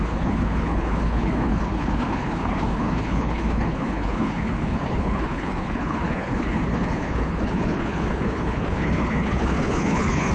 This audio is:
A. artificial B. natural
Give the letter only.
A